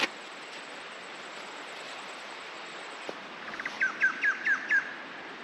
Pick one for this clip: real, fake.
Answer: fake